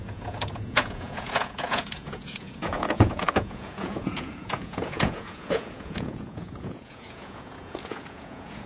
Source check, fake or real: fake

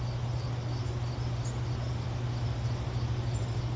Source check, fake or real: real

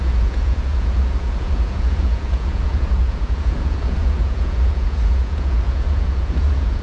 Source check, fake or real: fake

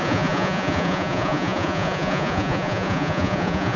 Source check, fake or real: fake